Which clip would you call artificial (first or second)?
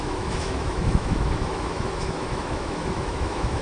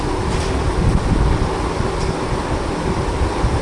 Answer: first